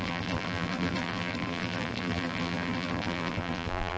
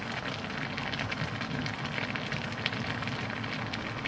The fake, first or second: first